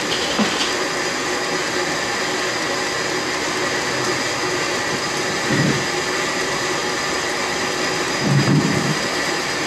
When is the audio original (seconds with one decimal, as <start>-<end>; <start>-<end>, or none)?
0.6-4.5; 6.8-8.0